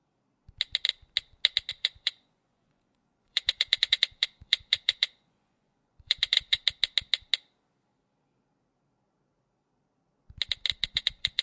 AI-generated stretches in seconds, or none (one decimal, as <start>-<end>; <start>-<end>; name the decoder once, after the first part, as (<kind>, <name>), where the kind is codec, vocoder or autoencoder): 1.7-6.6 (vocoder, Vocos); 10.9-11.4